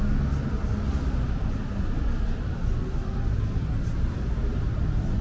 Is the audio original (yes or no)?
yes